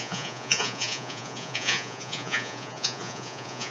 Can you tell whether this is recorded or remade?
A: remade